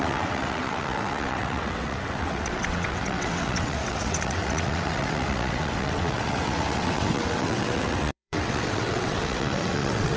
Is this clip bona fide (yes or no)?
no